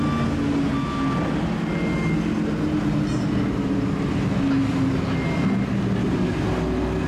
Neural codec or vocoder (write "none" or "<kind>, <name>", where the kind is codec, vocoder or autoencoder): none